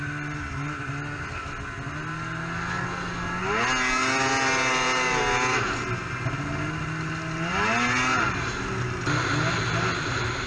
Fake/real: real